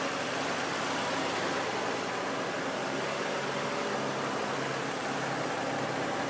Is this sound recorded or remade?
recorded